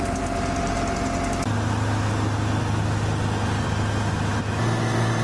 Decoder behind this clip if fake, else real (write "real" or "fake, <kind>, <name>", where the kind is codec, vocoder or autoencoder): real